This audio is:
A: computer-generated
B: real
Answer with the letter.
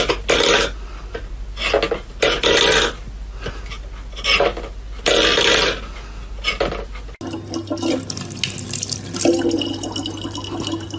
B